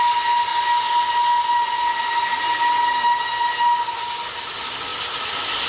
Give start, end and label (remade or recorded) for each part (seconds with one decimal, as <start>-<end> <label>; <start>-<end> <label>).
0.0-5.7 recorded